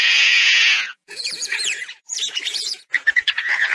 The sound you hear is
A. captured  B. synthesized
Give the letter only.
B